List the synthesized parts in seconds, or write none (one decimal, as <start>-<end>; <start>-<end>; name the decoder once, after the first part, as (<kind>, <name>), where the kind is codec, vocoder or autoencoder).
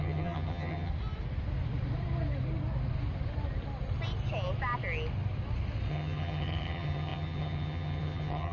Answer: 0.0-0.9 (vocoder, HiFi-GAN); 5.9-8.5